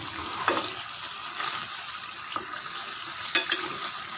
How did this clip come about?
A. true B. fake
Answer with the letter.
A